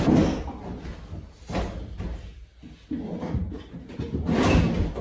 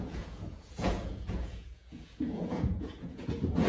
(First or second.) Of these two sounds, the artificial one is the second